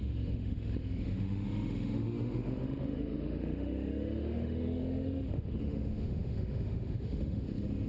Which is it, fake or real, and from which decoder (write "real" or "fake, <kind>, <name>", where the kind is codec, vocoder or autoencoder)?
fake, autoencoder, DAC-VAE